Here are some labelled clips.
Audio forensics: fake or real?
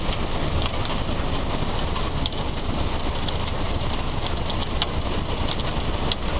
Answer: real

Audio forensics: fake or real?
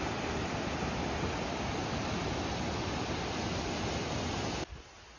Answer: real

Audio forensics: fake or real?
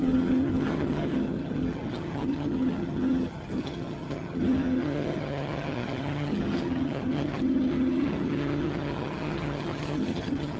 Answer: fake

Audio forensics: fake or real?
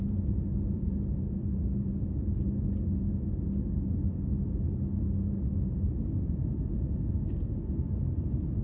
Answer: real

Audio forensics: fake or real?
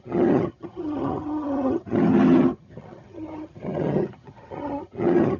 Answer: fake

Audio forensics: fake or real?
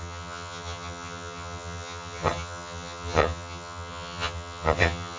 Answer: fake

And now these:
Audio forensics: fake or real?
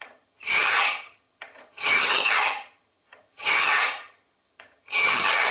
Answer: fake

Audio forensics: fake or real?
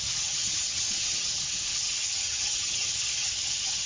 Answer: fake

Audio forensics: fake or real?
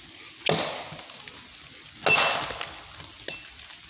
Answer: real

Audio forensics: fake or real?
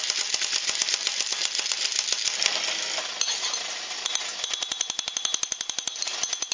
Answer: real